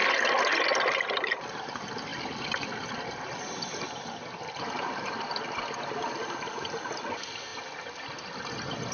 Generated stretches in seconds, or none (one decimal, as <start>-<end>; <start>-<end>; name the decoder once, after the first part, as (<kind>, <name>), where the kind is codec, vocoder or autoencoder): 0.5-7.5 (vocoder, BigVGAN v2)